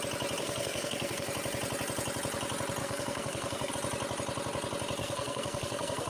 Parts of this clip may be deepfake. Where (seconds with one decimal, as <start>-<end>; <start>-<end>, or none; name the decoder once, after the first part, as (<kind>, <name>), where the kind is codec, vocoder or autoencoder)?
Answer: 0.4-1.3 (codec, SNAC); 2.8-3.7; 5.0-6.1